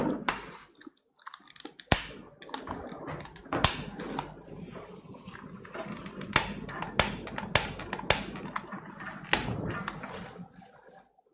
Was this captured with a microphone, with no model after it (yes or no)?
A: yes